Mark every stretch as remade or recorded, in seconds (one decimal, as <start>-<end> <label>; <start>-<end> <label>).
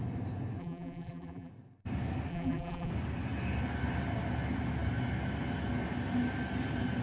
0.0-0.6 recorded; 0.6-1.5 remade; 1.5-2.3 recorded; 2.3-2.9 remade; 2.9-7.0 recorded